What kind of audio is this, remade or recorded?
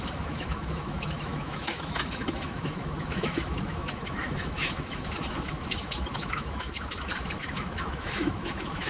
remade